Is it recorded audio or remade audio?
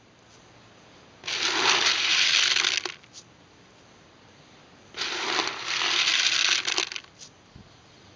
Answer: recorded